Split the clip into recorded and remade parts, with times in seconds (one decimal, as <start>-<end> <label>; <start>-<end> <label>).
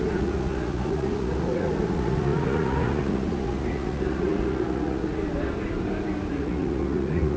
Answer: 0.0-5.2 remade; 5.2-6.3 recorded; 6.3-7.4 remade